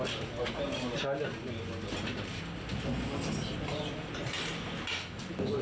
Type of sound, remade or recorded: recorded